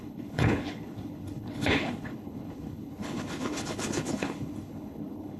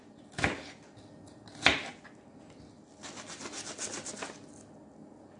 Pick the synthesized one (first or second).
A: first